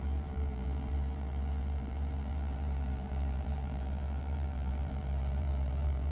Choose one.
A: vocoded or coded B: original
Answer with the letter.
A